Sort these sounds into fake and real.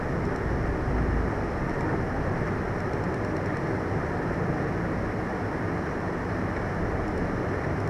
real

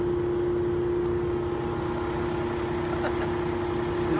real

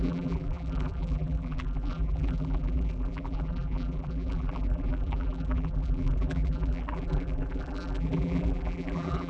fake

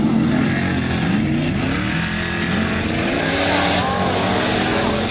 real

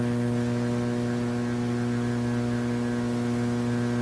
real